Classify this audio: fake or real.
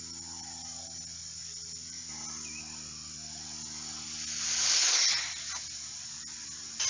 real